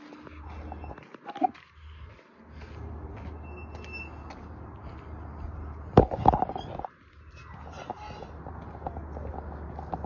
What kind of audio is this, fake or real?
real